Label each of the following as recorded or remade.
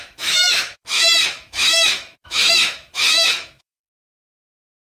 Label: remade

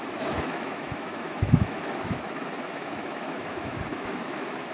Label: remade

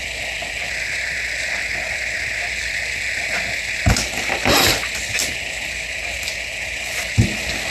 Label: recorded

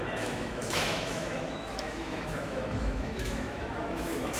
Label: remade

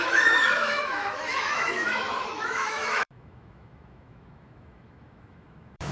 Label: remade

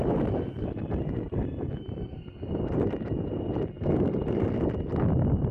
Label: recorded